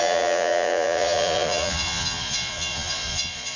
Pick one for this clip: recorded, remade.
remade